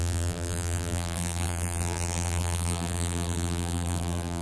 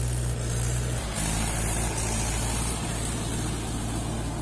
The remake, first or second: first